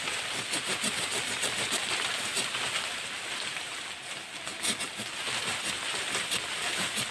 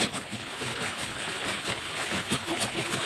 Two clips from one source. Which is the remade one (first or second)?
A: second